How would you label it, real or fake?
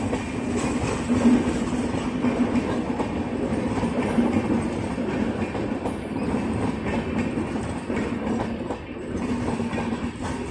real